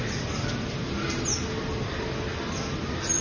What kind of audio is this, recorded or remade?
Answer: recorded